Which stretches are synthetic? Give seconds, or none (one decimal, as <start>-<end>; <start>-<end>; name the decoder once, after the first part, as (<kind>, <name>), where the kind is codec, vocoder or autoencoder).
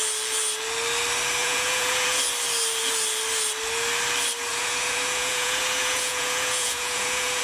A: 1.4-2.2 (vocoder, Vocos); 4.5-7.4